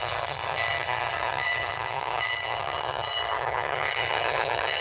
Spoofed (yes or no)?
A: yes